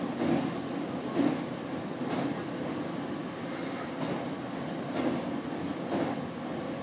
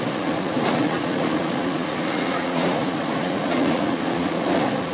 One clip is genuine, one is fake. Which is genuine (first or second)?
first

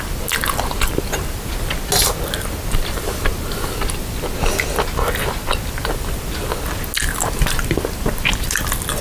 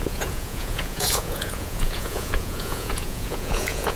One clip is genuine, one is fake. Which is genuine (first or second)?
first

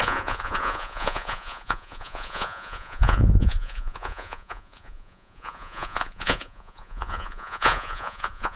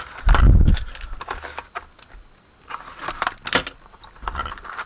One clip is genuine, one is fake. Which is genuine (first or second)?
second